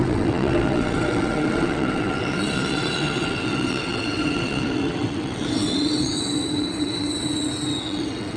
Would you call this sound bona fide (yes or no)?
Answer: no